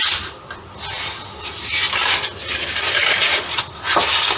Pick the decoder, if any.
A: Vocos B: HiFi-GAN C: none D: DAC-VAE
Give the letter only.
C